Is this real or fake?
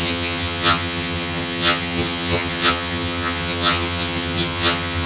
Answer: fake